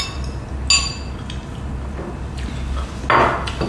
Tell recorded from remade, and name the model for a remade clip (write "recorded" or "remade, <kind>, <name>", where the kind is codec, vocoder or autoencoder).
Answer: recorded